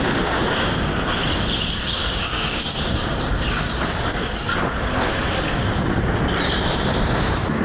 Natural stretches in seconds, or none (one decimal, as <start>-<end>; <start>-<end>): 0.9-2.0; 3.0-7.1